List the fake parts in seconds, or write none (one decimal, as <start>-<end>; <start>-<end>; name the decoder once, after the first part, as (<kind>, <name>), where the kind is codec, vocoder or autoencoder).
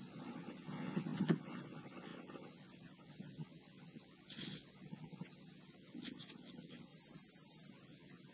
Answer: 0.0-6.9 (vocoder, Vocos); 7.7-8.3